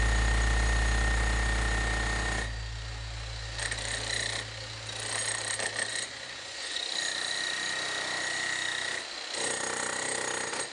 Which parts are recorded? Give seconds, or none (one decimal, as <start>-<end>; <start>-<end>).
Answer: 0.0-5.9; 6.9-10.7